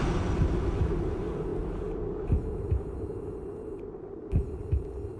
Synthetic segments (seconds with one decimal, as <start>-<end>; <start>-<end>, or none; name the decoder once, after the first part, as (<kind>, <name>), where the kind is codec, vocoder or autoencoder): none